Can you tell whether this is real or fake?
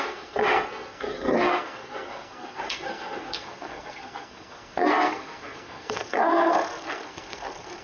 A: fake